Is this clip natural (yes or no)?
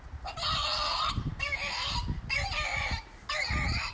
yes